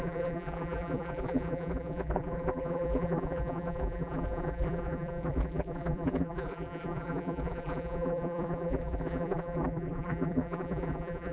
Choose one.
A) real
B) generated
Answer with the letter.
B